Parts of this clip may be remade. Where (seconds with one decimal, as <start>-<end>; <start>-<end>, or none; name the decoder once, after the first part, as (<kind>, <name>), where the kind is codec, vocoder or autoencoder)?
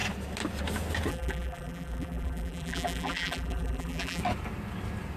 1.1-4.2 (vocoder, BigVGAN v2)